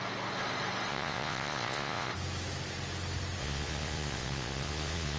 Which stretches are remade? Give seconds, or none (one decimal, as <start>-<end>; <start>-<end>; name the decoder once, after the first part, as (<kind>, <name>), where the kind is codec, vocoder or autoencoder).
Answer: 0.9-2.1 (vocoder, Vocos); 3.4-5.2